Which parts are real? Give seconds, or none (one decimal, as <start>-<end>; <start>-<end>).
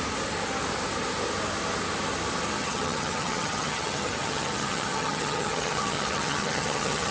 0.0-2.6